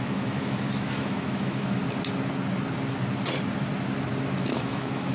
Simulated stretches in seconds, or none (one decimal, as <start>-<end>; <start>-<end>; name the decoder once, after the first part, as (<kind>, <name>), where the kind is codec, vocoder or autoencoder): 0.0-1.8 (autoencoder, DAC-VAE); 4.4-5.1